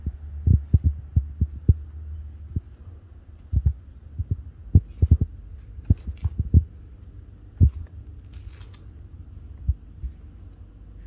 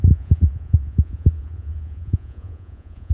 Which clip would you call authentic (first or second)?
first